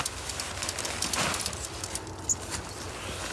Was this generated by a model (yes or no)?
no